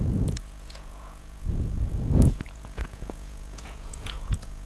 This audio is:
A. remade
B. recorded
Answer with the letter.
A